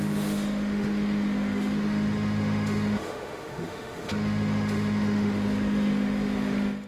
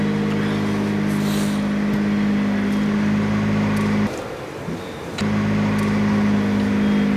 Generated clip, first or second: first